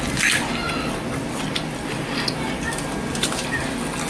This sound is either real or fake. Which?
real